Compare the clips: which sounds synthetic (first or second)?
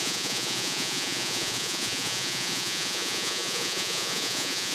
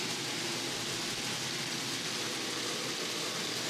first